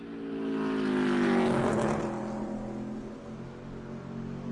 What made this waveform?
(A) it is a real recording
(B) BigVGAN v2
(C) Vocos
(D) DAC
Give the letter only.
A